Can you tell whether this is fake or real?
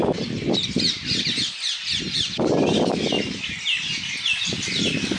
real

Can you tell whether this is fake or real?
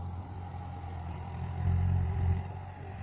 fake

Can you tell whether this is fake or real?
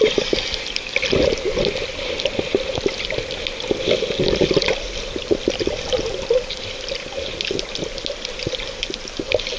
real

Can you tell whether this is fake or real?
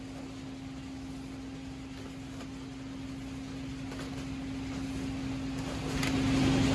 real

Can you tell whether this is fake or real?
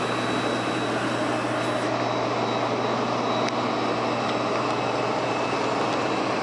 real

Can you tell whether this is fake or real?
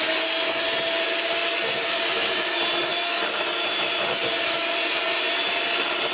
real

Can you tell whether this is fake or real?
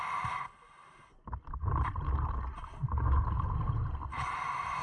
real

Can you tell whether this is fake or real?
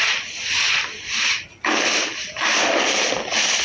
real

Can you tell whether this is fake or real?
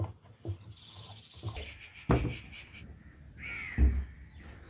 real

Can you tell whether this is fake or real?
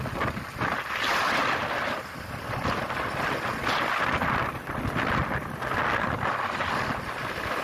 real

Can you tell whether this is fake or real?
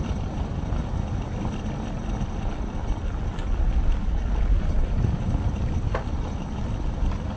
real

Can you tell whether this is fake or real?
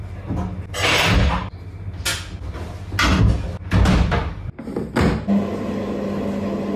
real